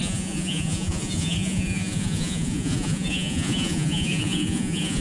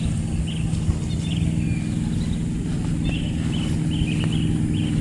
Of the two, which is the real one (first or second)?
second